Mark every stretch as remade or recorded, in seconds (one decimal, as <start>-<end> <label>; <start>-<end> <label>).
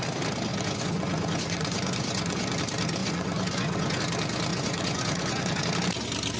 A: 0.0-0.5 recorded; 0.5-2.6 remade; 2.6-3.0 recorded; 3.0-4.0 remade; 4.0-4.5 recorded; 4.5-5.6 remade; 5.6-6.4 recorded